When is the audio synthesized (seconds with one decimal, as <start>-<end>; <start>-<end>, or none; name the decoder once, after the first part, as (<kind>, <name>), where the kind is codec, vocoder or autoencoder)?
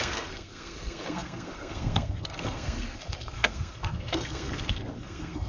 0.0-5.5 (codec, SNAC)